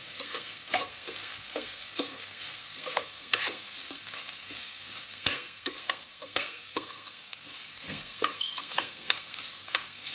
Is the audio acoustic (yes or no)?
no